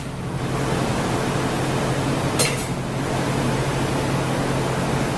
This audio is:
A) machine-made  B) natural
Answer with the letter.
B